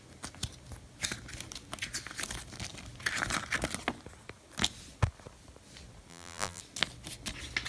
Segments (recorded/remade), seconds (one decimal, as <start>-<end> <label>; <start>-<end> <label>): 0.0-6.1 recorded; 6.1-6.6 remade; 6.6-7.7 recorded

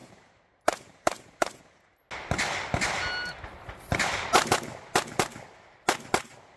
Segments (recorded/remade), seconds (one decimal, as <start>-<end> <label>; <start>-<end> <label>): 0.0-1.6 remade; 1.6-3.5 recorded; 3.5-4.5 remade; 4.5-6.6 recorded

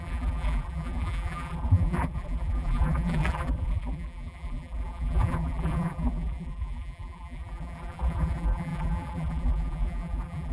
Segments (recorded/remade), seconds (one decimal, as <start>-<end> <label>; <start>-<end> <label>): 0.0-10.5 remade